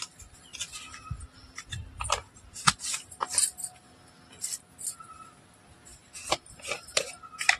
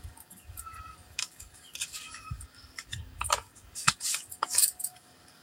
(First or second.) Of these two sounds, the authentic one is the first